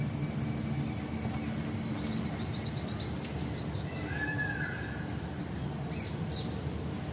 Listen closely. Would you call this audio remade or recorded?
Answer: recorded